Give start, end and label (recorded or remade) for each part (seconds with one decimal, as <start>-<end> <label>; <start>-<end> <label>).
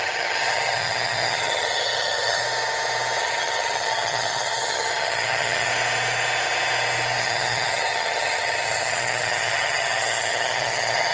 0.0-2.4 remade; 2.4-3.2 recorded; 3.2-5.7 remade; 5.7-7.2 recorded; 7.2-11.1 remade